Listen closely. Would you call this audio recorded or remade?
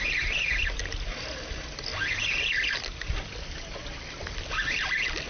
recorded